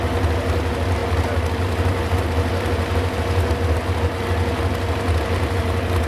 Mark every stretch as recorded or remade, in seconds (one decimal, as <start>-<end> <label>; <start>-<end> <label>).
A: 0.0-6.1 recorded